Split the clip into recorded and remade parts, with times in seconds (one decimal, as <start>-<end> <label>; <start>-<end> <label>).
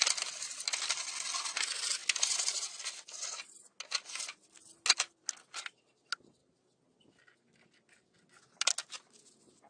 0.0-9.7 recorded